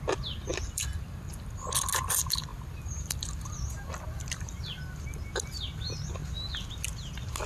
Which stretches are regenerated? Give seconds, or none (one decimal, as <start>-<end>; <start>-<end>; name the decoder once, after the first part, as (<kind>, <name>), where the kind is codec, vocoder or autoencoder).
2.5-5.0 (vocoder, BigVGAN v2)